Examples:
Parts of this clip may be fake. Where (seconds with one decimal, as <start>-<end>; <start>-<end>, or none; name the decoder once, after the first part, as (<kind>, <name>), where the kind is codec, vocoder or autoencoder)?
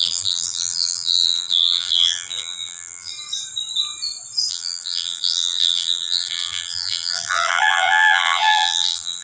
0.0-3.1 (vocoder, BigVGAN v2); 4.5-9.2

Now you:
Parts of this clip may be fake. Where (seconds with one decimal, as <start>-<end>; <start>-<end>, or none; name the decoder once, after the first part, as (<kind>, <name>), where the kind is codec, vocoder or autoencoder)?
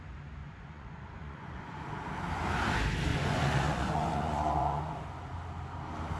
0.4-1.8 (vocoder, Vocos); 3.1-4.8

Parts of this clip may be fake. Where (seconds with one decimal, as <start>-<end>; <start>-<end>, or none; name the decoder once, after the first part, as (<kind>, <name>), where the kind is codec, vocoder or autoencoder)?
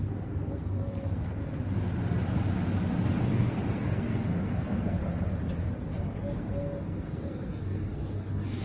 0.0-1.4 (codec, SNAC); 3.3-5.0; 5.7-8.6